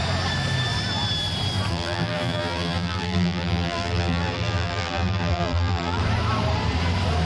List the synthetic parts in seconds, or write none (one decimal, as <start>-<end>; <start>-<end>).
1.7-6.0